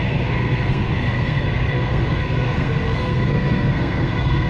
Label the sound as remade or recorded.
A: remade